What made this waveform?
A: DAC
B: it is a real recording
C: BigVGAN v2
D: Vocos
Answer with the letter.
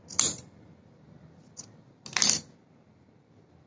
B